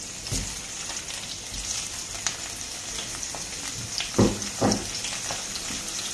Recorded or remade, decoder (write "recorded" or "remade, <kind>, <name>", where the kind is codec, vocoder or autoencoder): recorded